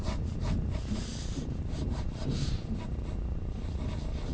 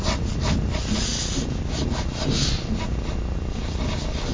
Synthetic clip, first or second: first